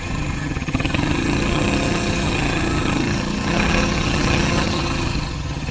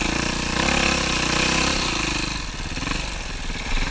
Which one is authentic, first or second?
second